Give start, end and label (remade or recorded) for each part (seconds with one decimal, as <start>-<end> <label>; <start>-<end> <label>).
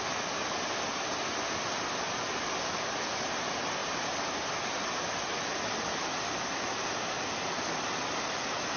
0.0-3.8 recorded; 3.8-4.6 remade; 4.6-8.8 recorded